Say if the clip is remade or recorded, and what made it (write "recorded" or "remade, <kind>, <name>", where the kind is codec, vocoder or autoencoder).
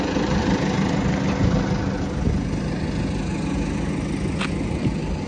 recorded